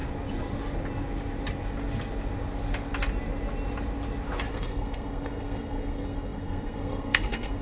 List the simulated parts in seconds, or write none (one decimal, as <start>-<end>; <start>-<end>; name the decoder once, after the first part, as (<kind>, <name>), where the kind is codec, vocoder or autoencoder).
4.5-7.6 (codec, SNAC)